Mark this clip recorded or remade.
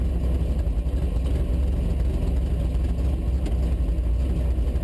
recorded